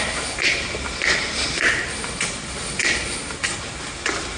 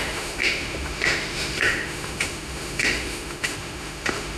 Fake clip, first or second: second